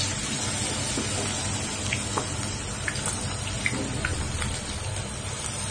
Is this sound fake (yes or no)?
no